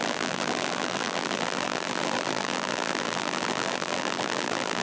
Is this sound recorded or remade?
remade